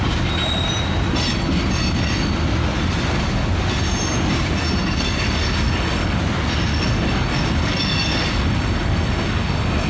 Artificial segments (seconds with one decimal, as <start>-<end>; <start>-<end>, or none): 4.8-6.2; 6.7-9.9